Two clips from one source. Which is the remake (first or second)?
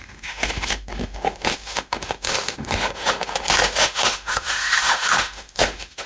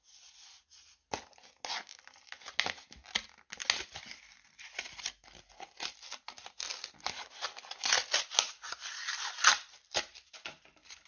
first